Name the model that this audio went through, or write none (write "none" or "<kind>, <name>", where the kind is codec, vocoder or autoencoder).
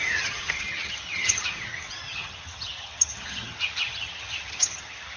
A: vocoder, HiFi-GAN